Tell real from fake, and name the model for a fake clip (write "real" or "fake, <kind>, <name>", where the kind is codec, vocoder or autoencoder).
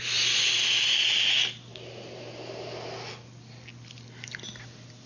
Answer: real